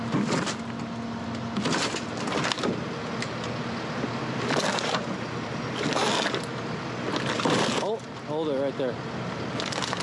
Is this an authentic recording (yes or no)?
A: yes